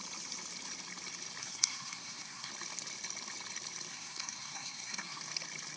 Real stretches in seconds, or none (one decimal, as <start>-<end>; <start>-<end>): 0.0-1.4; 2.5-3.9; 5.2-5.8